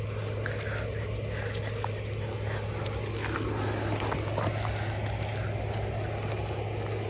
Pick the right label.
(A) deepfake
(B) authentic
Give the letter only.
B